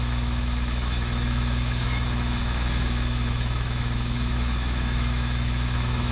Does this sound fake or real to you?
fake